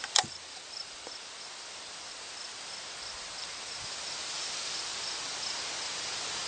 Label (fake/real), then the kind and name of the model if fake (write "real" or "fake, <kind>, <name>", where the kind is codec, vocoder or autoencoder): real